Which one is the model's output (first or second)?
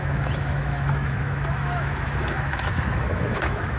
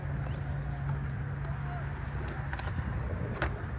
first